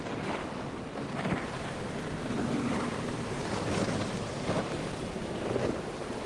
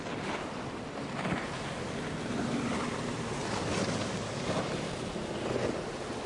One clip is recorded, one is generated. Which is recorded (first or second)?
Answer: second